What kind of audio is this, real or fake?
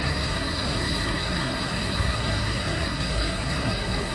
fake